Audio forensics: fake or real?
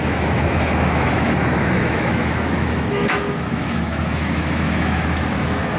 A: fake